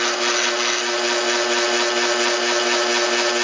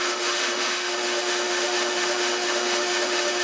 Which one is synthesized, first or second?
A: second